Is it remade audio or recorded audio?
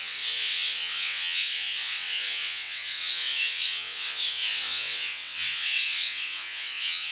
remade